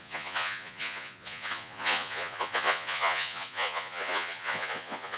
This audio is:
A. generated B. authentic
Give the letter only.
A